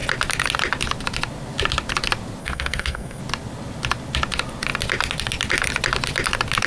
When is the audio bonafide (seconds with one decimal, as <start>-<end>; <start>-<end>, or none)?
0.0-2.4; 3.2-6.7

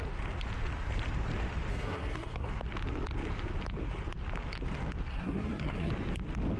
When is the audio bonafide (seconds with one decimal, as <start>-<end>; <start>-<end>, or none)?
0.0-1.7; 2.5-5.1; 5.9-6.6